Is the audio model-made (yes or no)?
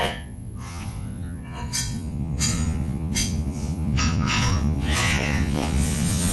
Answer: yes